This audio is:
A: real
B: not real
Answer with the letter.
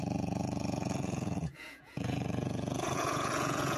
B